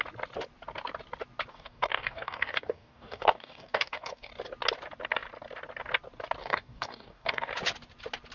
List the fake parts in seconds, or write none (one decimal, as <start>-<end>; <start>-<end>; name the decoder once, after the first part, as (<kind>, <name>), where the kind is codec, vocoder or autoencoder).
1.5-4.3 (codec, DAC); 6.4-7.5